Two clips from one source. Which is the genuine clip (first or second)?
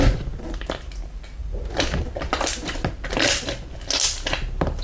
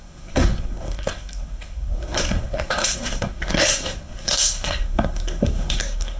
first